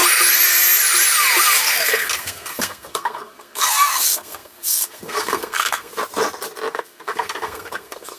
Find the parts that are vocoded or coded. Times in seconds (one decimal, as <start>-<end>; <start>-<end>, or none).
1.6-5.9; 6.7-8.2